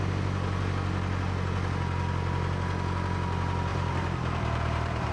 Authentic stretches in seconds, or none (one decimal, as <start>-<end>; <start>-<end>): 0.0-3.7